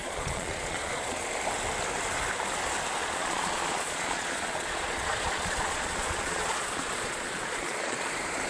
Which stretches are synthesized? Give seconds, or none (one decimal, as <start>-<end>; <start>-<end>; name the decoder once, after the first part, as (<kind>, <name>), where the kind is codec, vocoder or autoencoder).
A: 0.0-1.3 (vocoder, Vocos); 3.0-8.1